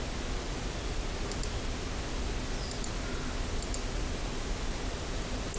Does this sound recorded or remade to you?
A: recorded